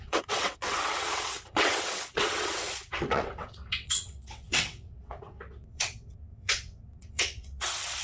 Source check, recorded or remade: remade